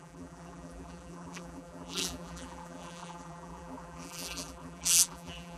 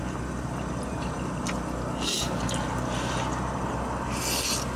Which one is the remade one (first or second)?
first